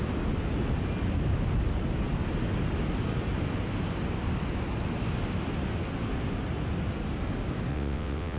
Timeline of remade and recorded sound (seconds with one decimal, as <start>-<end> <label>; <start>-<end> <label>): 0.0-7.7 recorded; 7.7-8.4 remade